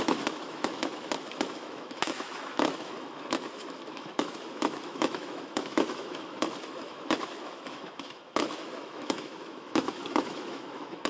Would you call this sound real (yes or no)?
no